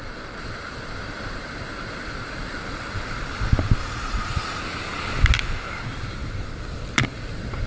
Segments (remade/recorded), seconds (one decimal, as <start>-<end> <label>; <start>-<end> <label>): 0.0-3.8 recorded; 3.8-4.6 remade; 4.6-7.7 recorded